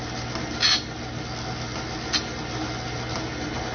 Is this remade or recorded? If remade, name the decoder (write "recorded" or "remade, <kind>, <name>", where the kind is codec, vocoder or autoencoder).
recorded